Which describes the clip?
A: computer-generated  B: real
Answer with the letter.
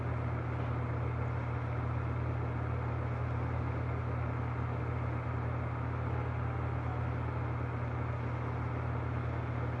B